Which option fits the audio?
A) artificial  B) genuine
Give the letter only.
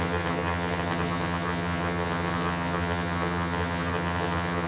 A